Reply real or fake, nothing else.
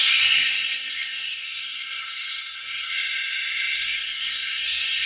fake